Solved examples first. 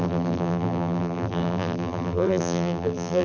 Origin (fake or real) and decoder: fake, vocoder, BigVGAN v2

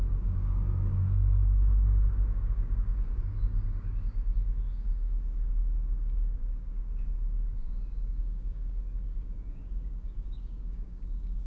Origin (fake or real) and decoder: fake, codec, DAC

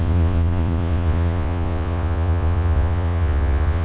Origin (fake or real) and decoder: fake, vocoder, Vocos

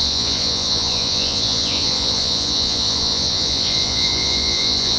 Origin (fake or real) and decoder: fake, vocoder, Vocos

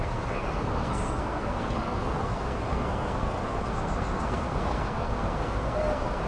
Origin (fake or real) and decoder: fake, codec, SNAC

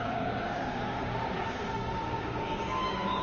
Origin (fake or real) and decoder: fake, codec, DAC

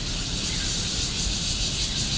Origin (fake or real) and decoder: real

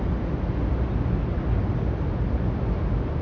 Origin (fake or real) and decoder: real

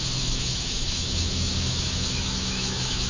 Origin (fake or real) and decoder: fake, autoencoder, DAC-VAE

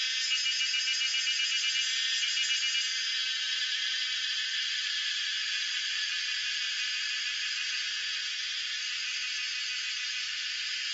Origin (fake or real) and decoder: real